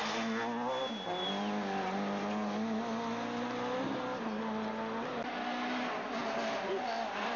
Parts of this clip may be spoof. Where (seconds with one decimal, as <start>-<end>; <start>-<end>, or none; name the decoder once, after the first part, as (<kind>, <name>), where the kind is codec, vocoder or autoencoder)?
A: none